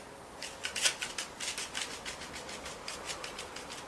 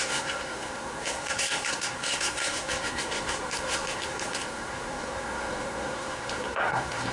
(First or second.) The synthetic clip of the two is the second